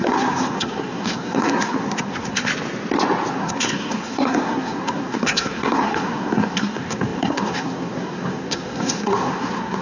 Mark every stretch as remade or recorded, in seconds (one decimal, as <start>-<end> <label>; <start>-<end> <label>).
0.0-2.5 remade; 2.5-3.3 recorded; 3.3-9.8 remade

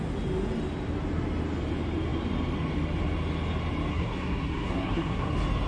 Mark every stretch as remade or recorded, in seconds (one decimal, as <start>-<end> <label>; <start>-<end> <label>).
0.0-3.9 recorded; 3.9-5.3 remade; 5.3-5.7 recorded

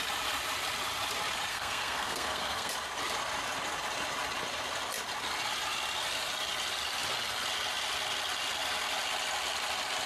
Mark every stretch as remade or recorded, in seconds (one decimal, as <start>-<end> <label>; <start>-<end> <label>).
0.0-1.5 recorded; 1.5-2.7 remade; 2.7-10.1 recorded

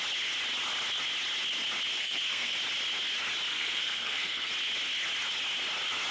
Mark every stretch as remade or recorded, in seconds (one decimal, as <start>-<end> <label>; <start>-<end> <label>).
0.0-2.0 recorded; 2.0-2.5 remade; 2.5-3.5 recorded; 3.5-4.5 remade; 4.5-6.1 recorded

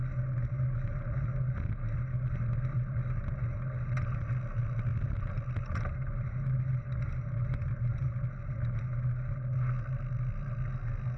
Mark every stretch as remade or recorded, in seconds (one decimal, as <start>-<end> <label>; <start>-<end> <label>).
0.0-11.2 recorded

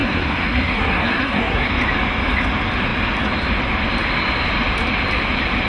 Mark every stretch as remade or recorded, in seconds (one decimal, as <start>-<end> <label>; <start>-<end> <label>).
0.0-1.7 remade; 1.7-5.7 recorded

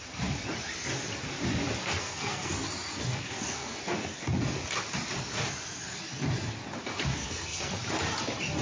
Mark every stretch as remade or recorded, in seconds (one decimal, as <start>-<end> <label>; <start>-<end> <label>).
0.0-1.8 recorded; 1.8-2.5 remade; 2.5-2.9 recorded; 2.9-3.8 remade; 3.8-7.2 recorded; 7.2-7.7 remade; 7.7-8.6 recorded

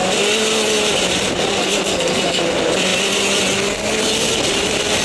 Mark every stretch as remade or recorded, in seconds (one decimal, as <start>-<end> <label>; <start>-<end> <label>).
0.0-1.6 recorded; 1.6-2.4 remade; 2.4-5.0 recorded